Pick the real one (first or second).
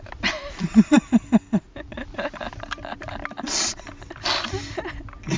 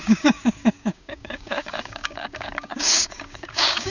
first